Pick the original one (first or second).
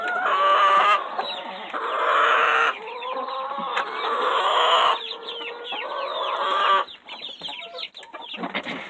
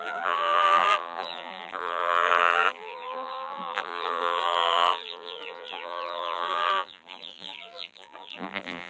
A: first